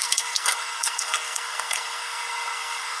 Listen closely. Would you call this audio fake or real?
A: fake